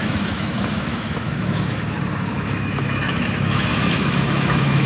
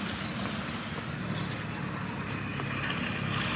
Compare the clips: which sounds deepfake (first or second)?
first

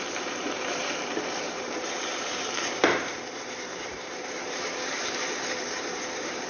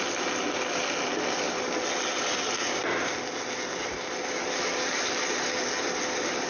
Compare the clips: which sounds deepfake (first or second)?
first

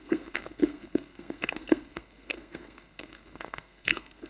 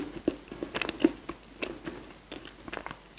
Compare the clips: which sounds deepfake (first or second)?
first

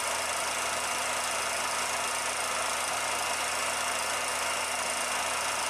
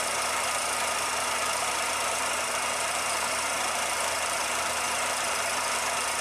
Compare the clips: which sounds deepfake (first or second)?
second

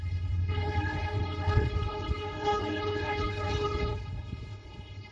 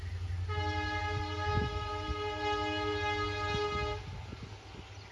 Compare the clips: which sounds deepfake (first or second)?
first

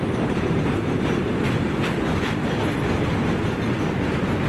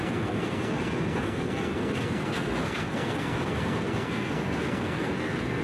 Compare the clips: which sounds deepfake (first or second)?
second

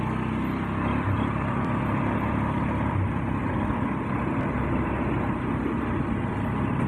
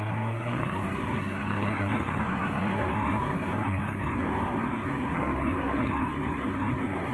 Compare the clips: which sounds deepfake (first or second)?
second